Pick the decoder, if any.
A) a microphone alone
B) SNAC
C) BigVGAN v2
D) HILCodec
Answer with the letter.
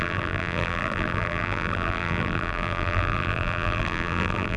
C